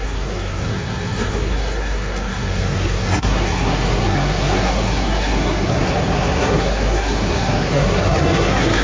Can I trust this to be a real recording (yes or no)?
no